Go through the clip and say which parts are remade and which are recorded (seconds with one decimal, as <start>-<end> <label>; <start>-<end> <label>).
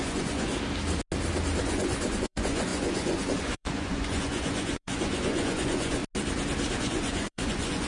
0.0-0.5 remade; 0.5-1.6 recorded; 1.6-6.0 remade; 6.0-6.8 recorded; 6.8-7.9 remade